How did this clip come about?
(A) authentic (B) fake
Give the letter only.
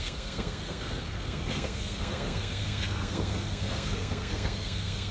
B